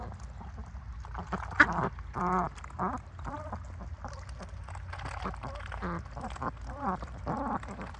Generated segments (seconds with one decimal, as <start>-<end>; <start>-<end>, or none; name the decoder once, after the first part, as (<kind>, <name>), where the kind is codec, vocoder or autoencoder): none